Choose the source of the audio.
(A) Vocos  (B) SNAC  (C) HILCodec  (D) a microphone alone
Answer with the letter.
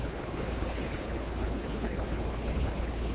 C